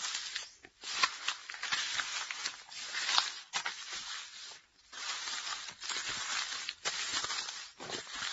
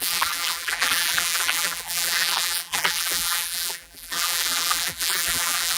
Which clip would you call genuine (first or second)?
first